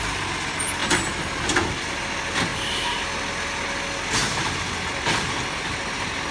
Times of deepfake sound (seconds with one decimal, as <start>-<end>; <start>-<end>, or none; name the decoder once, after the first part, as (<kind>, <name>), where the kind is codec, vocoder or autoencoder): none